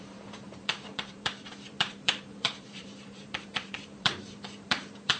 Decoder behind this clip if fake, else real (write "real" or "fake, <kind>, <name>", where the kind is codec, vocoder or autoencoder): fake, vocoder, BigVGAN v2